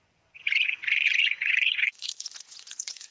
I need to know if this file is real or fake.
fake